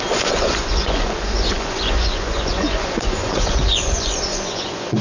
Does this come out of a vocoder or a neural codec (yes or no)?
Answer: yes